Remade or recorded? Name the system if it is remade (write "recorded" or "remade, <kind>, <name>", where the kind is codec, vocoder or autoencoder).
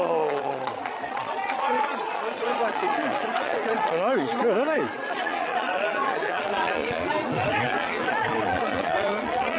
remade, vocoder, Vocos